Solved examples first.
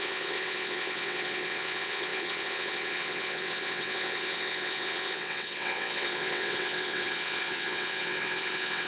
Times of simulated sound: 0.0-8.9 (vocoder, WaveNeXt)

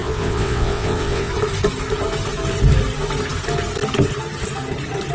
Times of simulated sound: 0.0-1.3 (vocoder, WaveNeXt)

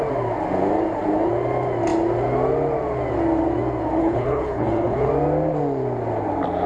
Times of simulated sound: 4.0-5.1 (codec, HILCodec)

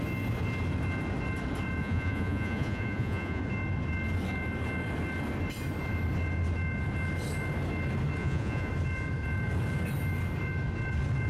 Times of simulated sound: 1.8-3.4 (vocoder, Vocos); 8.2-8.7

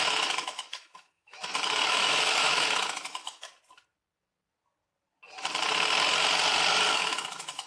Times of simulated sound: 0.0-3.5 (autoencoder, DAC-VAE); 6.9-7.7